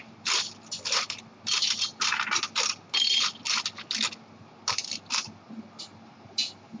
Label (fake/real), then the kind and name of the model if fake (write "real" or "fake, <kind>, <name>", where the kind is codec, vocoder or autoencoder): real